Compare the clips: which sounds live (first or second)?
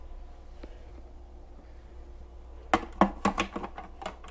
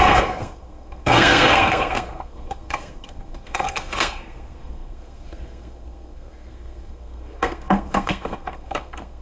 first